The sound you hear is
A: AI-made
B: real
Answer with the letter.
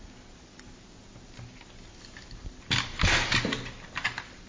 B